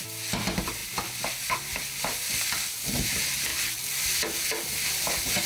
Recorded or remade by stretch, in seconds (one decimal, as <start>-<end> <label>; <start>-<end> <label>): 0.0-5.5 recorded